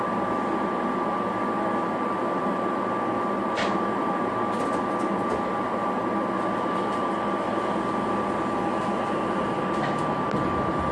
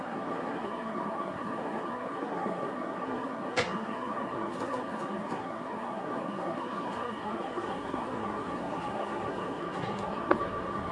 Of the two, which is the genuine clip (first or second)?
first